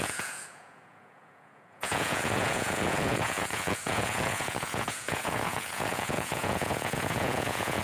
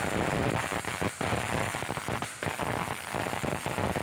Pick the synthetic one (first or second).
first